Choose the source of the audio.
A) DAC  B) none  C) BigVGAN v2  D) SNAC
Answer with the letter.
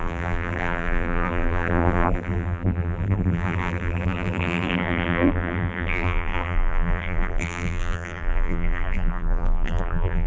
C